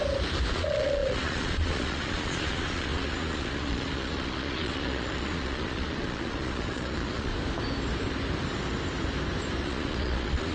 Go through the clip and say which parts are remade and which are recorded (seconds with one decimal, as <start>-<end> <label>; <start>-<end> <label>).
0.0-0.5 recorded; 0.5-7.3 remade; 7.3-9.6 recorded; 9.6-10.5 remade